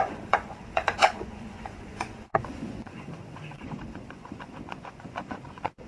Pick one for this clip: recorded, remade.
remade